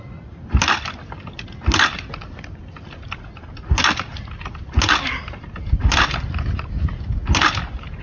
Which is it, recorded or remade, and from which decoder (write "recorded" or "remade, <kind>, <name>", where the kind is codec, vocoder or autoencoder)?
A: recorded